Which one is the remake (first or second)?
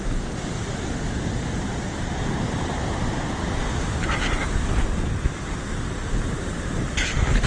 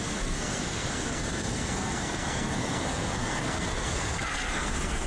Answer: second